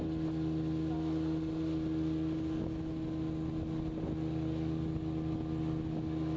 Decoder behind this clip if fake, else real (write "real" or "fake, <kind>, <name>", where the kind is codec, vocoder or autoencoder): real